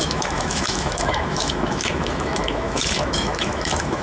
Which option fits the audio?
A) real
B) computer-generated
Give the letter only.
B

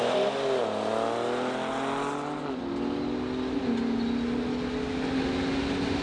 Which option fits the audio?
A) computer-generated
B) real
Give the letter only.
B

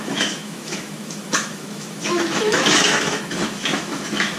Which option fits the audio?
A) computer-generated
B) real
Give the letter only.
A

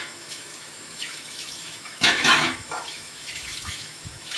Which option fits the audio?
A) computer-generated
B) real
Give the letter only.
A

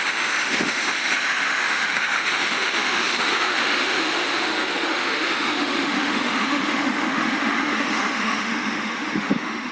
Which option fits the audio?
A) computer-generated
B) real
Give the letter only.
A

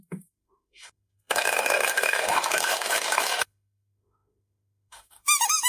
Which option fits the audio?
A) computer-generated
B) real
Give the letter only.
A